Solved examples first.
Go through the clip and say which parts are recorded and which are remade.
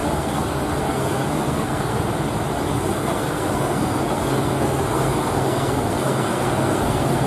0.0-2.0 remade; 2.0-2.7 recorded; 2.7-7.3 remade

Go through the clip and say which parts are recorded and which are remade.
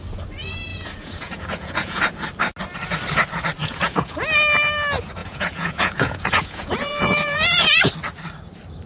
0.0-0.7 recorded; 0.7-2.0 remade; 2.0-3.6 recorded; 3.6-4.2 remade; 4.2-5.2 recorded; 5.2-7.9 remade; 7.9-8.9 recorded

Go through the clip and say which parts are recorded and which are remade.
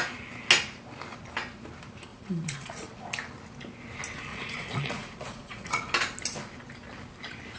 0.0-2.1 recorded; 2.1-2.9 remade; 2.9-4.3 recorded; 4.3-5.9 remade; 5.9-7.6 recorded